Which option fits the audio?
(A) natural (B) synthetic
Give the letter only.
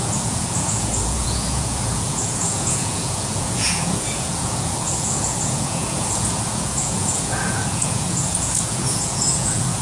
B